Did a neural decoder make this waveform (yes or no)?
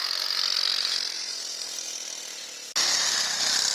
no